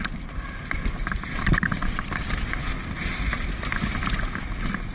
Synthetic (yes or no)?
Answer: no